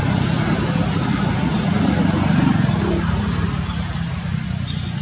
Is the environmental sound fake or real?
real